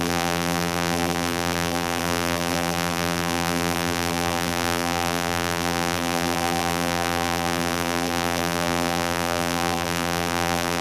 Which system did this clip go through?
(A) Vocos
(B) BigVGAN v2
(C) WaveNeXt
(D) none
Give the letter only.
B